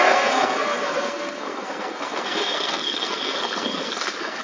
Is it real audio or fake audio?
fake